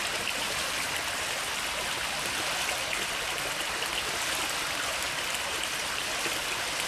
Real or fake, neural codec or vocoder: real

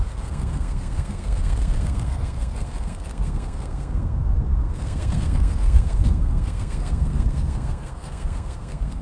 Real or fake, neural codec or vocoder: fake, codec, SNAC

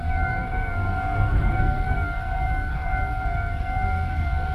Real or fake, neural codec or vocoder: fake, codec, SNAC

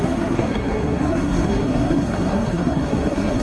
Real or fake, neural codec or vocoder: fake, codec, SNAC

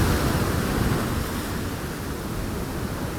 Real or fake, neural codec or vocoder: real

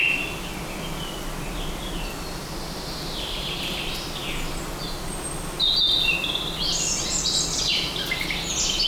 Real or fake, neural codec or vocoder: real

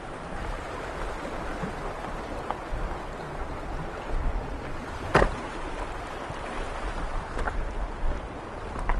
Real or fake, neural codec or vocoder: real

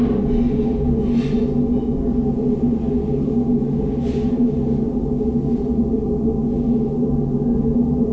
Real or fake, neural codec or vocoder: real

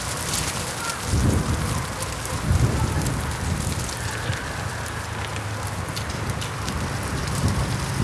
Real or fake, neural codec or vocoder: real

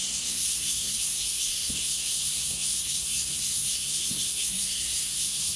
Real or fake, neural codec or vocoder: fake, codec, SNAC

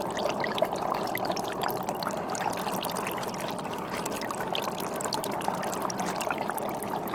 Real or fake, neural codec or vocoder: real